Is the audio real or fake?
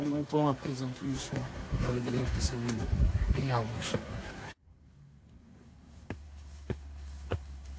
fake